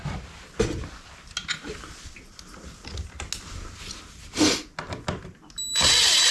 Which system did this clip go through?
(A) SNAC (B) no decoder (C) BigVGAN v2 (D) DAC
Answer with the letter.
B